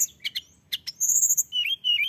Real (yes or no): no